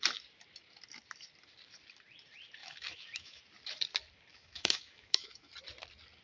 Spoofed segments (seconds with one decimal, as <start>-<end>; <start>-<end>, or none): 2.6-3.4; 4.3-5.5